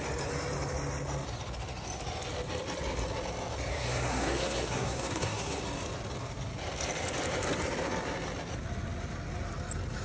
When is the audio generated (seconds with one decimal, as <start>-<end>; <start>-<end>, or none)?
3.7-5.6